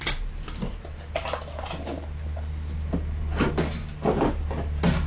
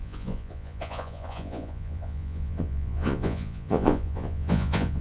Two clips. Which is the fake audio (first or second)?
second